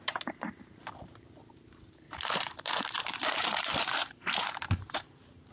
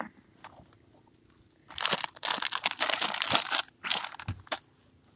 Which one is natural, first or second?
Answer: second